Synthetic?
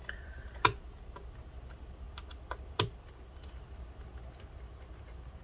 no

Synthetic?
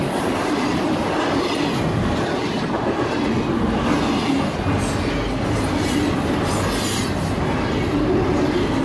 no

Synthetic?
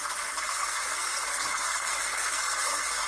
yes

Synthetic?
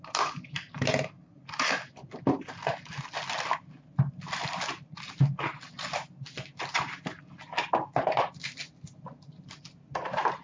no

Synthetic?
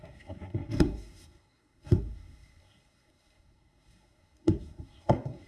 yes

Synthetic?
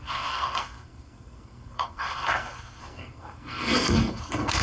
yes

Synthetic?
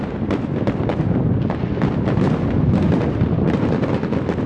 no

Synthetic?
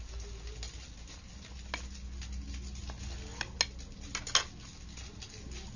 no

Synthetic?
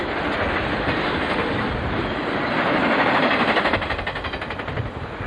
no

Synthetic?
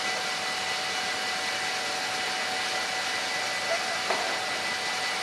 no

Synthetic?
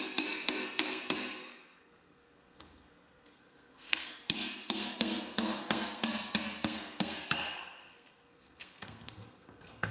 yes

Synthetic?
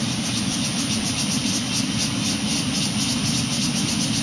no